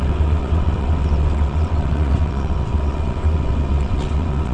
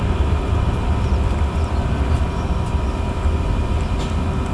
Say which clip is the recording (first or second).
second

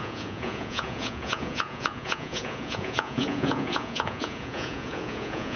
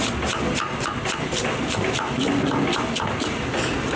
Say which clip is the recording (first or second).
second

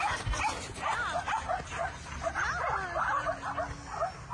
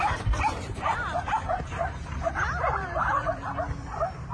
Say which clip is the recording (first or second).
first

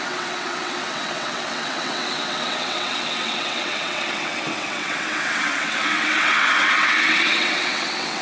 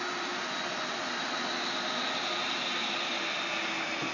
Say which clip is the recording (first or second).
second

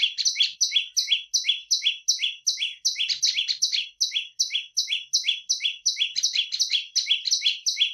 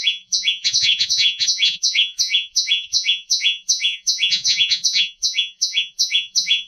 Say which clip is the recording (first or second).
first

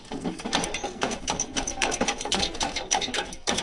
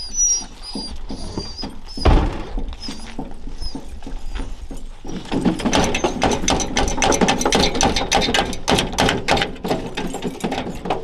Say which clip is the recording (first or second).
second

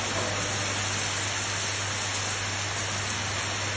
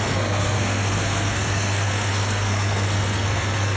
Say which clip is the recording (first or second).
first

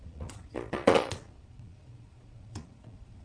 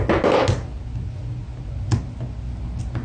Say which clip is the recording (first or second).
second